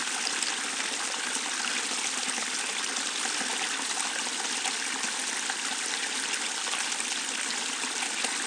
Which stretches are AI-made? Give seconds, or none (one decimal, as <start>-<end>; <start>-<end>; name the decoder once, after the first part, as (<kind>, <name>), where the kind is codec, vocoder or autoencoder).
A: none

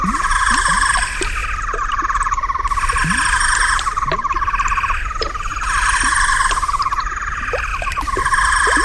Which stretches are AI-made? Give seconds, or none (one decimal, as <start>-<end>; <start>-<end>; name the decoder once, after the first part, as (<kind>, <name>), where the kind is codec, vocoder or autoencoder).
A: 5.5-6.7 (vocoder, BigVGAN v2); 7.7-8.2

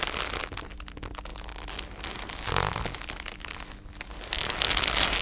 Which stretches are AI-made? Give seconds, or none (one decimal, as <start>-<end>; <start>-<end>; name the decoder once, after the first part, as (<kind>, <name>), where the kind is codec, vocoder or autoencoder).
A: none

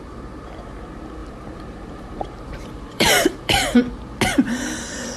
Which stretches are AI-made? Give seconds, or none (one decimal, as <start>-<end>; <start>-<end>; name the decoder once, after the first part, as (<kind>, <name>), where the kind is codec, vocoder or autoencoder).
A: 1.2-3.8 (vocoder, BigVGAN v2)

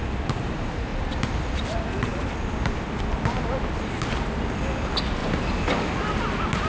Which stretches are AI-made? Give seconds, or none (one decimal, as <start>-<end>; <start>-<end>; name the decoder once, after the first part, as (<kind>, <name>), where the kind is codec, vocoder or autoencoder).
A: 0.9-1.6 (vocoder, BigVGAN v2); 2.1-3.2

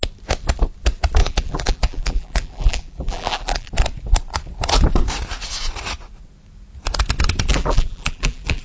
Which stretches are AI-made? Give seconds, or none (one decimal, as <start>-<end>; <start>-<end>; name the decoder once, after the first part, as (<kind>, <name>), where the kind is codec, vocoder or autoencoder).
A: 1.2-3.7 (vocoder, BigVGAN v2); 7.5-8.6